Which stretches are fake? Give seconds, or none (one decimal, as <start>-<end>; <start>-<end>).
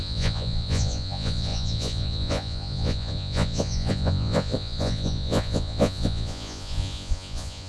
0.0-7.7